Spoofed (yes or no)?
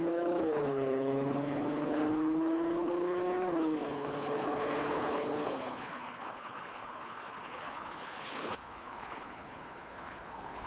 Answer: yes